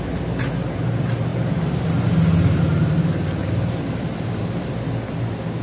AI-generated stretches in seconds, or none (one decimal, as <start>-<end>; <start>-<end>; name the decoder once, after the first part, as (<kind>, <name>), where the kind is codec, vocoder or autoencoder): none